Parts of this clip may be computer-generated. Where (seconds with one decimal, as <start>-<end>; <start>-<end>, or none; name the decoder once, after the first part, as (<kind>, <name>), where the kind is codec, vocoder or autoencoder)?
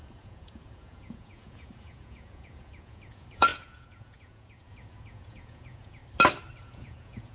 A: 0.0-6.0 (vocoder, Vocos); 6.6-7.3